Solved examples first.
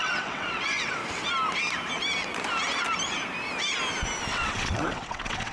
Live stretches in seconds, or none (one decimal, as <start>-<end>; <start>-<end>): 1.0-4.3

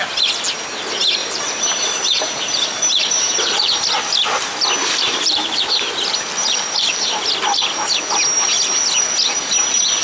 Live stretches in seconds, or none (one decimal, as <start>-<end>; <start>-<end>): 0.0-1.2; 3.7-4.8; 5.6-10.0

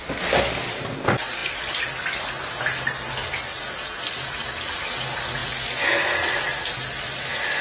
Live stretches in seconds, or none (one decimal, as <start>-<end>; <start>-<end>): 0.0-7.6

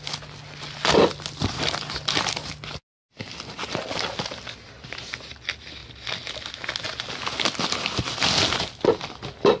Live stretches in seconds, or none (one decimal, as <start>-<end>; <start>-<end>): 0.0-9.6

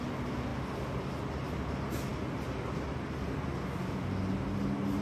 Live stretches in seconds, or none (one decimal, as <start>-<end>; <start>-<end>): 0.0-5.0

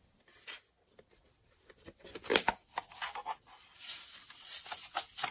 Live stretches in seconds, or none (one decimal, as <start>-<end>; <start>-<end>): 0.0-5.3

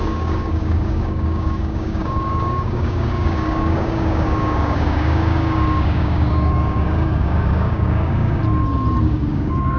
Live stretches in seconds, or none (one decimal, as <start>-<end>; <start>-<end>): 8.4-9.0